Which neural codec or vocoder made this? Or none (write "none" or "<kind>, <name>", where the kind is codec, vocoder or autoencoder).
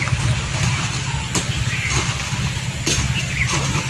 none